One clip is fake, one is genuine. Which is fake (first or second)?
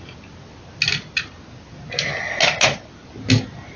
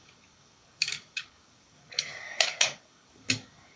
second